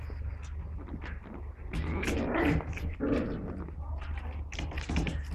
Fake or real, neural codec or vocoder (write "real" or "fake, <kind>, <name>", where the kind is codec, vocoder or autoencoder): real